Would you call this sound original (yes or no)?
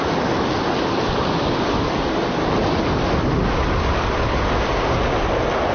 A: yes